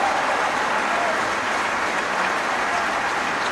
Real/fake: real